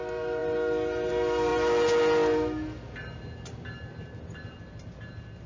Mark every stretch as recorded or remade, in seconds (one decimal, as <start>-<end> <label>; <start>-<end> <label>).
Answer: 0.0-5.5 recorded